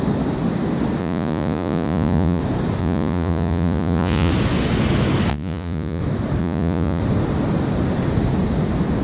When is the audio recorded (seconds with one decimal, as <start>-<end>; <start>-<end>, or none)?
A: 0.0-1.0; 2.4-2.8; 4.3-5.3; 6.0-6.4; 7.0-9.0